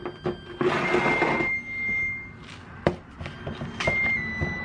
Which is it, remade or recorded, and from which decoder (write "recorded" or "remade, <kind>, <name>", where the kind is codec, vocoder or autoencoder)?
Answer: recorded